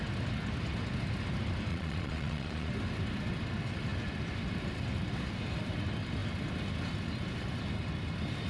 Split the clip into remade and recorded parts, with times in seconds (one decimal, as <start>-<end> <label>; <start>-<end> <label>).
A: 0.0-1.7 recorded; 1.7-2.7 remade; 2.7-8.5 recorded